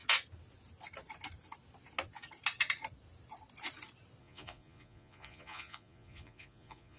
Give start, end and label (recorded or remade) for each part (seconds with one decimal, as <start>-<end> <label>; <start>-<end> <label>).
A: 0.0-4.2 recorded; 4.2-7.0 remade